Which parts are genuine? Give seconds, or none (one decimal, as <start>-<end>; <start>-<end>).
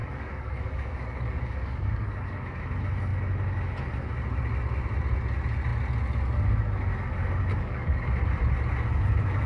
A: 2.6-7.5; 8.1-9.5